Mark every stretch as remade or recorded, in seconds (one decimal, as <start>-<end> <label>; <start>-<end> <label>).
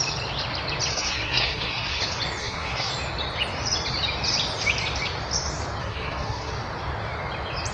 0.0-0.9 recorded; 0.9-2.0 remade; 2.0-2.4 recorded; 2.4-2.9 remade; 2.9-5.8 recorded; 5.8-6.5 remade; 6.5-7.7 recorded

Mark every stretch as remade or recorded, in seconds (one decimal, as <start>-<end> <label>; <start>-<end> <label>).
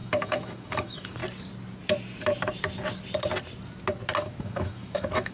0.0-1.2 remade; 1.2-4.4 recorded; 4.4-5.3 remade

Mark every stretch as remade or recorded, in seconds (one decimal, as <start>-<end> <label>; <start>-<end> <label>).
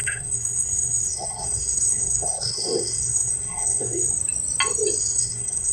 0.0-4.1 remade; 4.1-5.0 recorded; 5.0-5.7 remade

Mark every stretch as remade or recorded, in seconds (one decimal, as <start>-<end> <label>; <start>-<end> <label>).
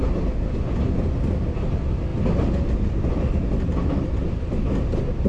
0.0-5.3 recorded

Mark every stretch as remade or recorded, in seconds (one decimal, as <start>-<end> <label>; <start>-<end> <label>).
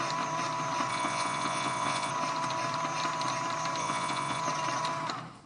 0.0-0.9 recorded; 0.9-2.1 remade; 2.1-3.8 recorded; 3.8-4.4 remade; 4.4-5.5 recorded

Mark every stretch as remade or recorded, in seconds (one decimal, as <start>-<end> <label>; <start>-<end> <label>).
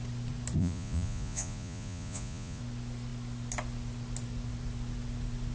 0.0-0.6 recorded; 0.6-2.6 remade; 2.6-5.5 recorded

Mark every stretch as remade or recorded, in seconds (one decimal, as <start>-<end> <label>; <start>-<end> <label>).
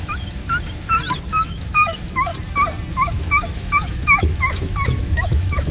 0.0-0.4 remade; 0.4-1.3 recorded; 1.3-2.3 remade; 2.3-3.1 recorded; 3.1-5.7 remade